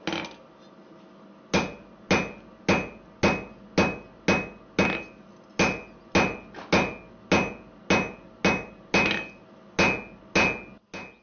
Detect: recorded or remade recorded